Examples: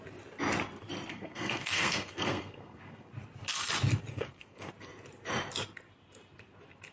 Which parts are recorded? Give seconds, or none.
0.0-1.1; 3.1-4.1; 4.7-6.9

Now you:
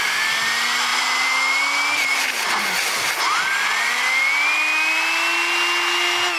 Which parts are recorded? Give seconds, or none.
0.0-6.4

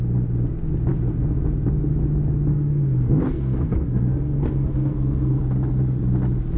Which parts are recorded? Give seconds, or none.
0.0-2.5; 5.4-6.6

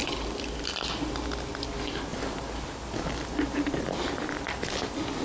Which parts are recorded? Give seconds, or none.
0.0-5.2

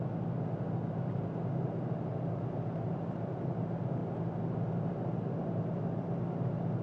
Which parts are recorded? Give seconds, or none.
0.0-6.8